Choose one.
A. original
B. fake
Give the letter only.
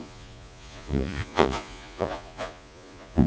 B